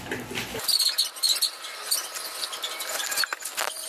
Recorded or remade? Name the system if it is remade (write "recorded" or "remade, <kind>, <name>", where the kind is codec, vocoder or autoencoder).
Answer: recorded